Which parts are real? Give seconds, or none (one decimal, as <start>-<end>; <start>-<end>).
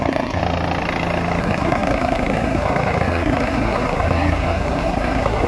0.4-1.4